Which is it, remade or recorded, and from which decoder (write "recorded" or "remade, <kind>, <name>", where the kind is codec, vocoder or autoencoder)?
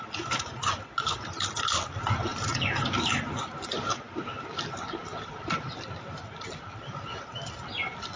recorded